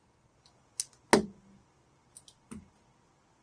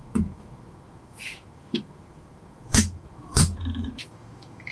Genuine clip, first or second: first